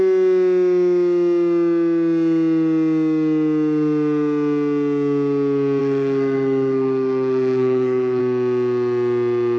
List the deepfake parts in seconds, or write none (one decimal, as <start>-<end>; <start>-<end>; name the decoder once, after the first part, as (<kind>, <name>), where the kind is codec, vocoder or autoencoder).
5.8-8.2 (codec, SNAC)

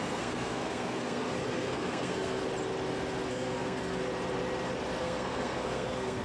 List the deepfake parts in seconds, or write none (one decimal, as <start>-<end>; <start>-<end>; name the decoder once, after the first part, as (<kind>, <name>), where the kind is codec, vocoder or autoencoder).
0.0-2.4 (codec, SNAC); 3.3-4.0; 5.0-6.2

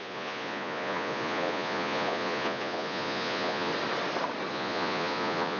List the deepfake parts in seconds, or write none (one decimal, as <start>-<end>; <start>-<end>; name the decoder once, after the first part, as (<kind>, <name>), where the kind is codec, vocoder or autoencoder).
0.0-3.7 (vocoder, Vocos); 4.5-5.6